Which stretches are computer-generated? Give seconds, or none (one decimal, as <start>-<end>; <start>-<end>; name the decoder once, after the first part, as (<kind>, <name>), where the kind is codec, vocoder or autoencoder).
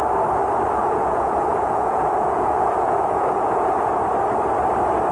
0.8-3.9 (vocoder, Vocos)